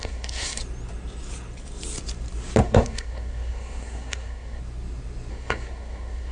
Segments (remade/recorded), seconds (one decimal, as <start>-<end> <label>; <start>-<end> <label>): 0.0-0.6 remade; 0.6-2.6 recorded; 2.6-4.6 remade; 4.6-5.3 recorded; 5.3-6.3 remade